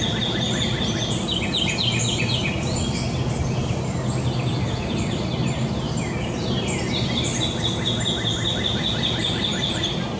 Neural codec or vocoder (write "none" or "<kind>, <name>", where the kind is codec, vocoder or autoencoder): none